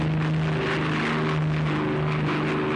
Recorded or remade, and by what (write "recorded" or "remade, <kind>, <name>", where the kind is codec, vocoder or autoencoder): recorded